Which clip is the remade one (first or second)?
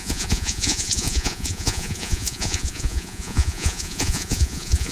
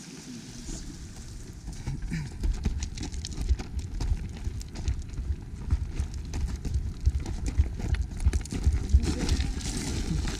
first